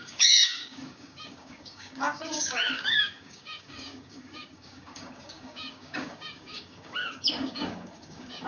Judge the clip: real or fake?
fake